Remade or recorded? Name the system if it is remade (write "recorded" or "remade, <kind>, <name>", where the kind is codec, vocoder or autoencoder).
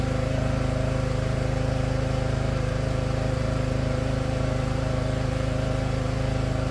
remade, vocoder, BigVGAN v2